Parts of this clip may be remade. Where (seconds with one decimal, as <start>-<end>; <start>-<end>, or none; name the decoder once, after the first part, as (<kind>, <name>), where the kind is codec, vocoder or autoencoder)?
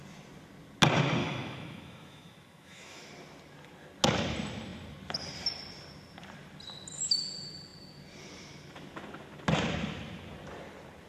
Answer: 1.2-3.1 (autoencoder, DAC-VAE)